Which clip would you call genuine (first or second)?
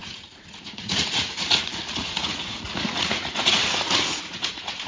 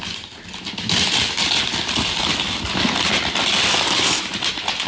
second